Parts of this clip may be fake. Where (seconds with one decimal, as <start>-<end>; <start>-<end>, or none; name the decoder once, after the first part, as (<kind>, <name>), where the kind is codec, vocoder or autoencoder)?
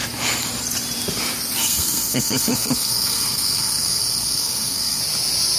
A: 1.6-5.0 (codec, SNAC)